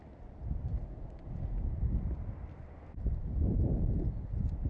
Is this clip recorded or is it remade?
recorded